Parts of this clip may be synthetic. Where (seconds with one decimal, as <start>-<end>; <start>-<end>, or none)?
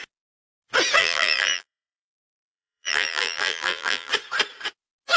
1.0-4.1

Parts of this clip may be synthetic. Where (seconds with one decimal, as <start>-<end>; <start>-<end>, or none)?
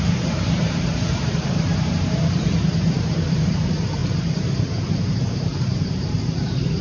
0.0-6.8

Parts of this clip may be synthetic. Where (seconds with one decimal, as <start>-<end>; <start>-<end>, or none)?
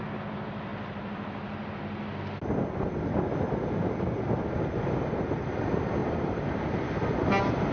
6.0-7.0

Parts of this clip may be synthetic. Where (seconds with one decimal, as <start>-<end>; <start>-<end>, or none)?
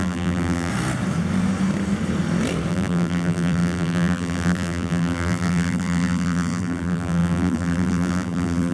0.0-0.7; 2.7-8.7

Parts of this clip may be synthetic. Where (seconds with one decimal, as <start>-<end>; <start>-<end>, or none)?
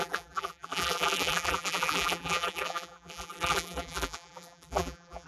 0.0-5.3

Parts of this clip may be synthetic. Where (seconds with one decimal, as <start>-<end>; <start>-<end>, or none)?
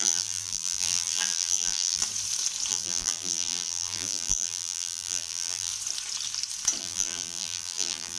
0.0-2.0; 2.7-5.7; 6.8-8.2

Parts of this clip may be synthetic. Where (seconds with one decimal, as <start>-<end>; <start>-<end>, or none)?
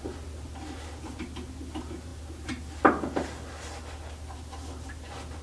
none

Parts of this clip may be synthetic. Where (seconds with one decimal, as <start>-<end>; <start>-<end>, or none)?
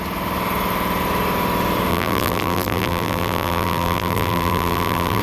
1.9-5.2